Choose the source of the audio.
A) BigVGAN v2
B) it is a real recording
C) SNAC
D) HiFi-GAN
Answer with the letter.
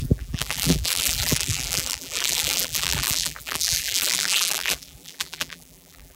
A